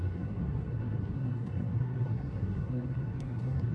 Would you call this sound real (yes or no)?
no